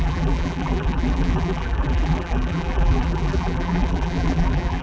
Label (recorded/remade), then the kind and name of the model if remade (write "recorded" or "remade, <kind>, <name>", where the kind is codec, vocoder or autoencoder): remade, vocoder, BigVGAN v2